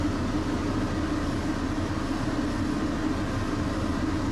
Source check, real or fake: real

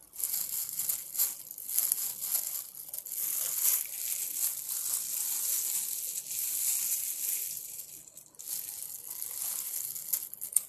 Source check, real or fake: real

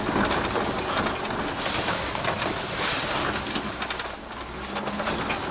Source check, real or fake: real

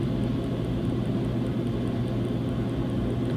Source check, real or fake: real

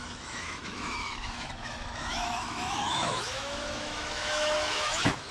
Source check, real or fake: fake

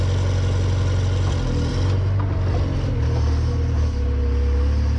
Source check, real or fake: real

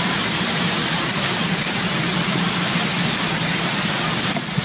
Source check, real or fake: real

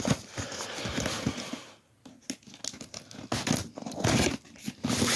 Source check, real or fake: real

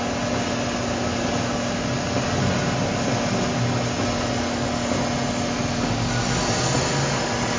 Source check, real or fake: real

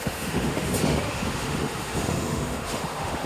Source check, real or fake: fake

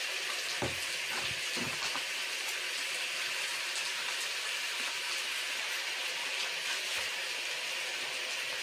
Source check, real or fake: real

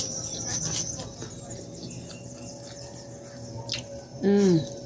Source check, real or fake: real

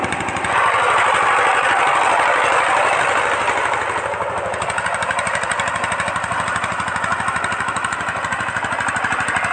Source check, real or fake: real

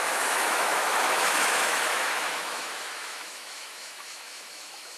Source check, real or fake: fake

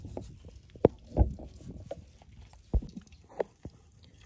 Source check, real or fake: real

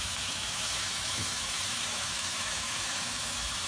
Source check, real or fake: fake